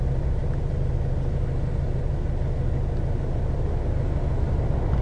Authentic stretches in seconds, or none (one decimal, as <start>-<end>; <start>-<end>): 0.0-5.0